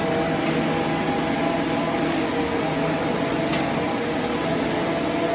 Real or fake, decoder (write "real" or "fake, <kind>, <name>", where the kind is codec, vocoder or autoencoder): real